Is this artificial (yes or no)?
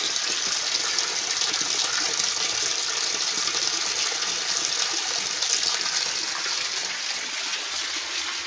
no